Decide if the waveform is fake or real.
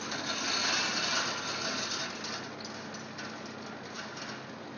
real